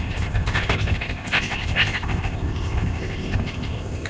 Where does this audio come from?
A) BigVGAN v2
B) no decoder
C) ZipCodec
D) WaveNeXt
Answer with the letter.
C